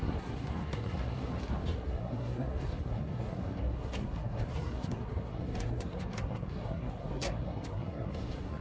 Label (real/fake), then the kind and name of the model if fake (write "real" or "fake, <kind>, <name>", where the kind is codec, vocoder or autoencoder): fake, codec, SNAC